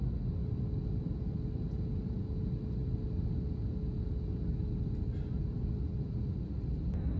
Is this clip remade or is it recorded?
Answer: recorded